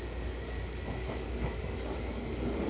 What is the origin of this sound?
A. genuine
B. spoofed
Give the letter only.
B